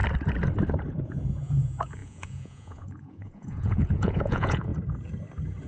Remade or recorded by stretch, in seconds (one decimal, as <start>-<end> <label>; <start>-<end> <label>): 0.0-0.9 recorded; 0.9-4.7 remade; 4.7-5.7 recorded